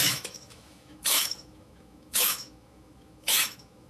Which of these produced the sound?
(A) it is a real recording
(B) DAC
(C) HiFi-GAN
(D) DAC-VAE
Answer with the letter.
D